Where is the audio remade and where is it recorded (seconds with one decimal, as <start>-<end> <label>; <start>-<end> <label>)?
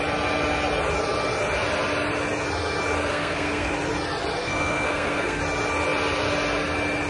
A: 0.0-3.1 recorded; 3.1-3.7 remade; 3.7-4.4 recorded; 4.4-5.4 remade; 5.4-7.1 recorded